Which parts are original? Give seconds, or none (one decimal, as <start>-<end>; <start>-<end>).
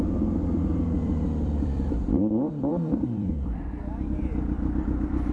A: 0.0-0.7; 3.7-5.3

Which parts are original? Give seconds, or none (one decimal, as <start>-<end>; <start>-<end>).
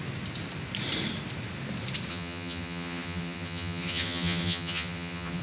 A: 0.0-2.1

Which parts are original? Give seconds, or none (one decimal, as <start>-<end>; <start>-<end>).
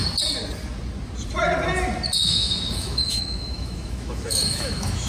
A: 0.0-2.2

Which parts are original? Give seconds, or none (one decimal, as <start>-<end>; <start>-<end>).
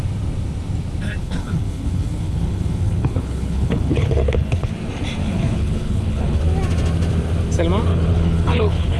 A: 0.0-1.2; 4.7-5.2; 6.4-7.9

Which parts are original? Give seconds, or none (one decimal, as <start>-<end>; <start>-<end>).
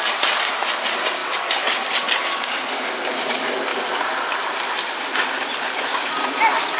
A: 0.0-1.2; 2.0-3.7; 6.0-6.8